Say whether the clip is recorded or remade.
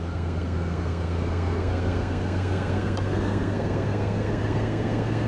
remade